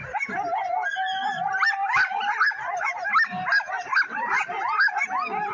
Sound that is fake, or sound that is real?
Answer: real